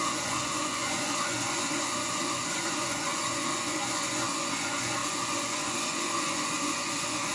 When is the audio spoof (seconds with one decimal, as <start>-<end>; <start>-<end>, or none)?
0.0-7.3